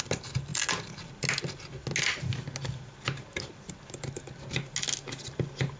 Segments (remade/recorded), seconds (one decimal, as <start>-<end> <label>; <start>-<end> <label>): 0.0-5.8 recorded